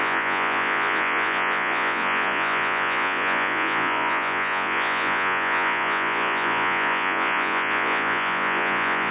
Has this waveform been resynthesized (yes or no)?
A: yes